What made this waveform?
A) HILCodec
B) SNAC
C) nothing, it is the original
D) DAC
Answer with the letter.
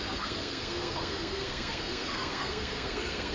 B